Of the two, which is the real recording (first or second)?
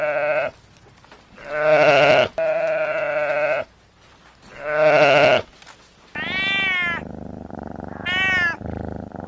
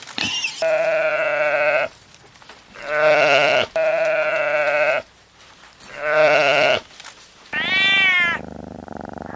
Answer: first